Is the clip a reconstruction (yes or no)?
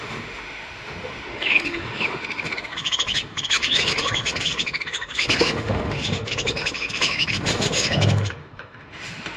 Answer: yes